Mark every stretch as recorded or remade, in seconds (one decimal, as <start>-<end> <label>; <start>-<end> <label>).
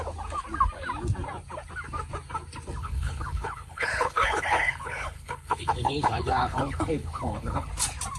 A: 0.0-2.8 recorded; 2.8-7.7 remade; 7.7-8.2 recorded